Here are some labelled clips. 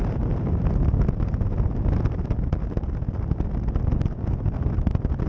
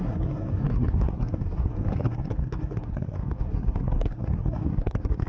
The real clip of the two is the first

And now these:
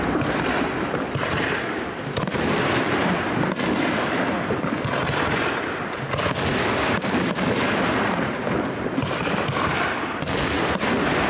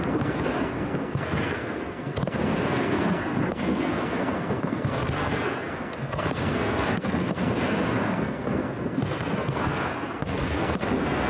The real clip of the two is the first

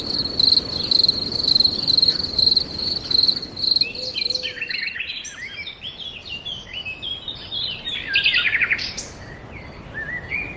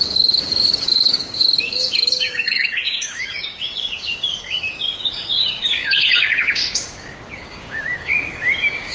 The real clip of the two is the first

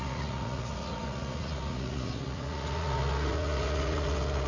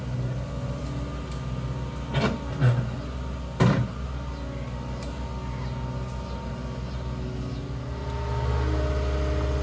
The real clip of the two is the second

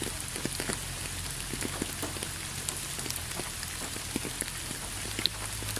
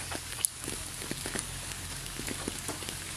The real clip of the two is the first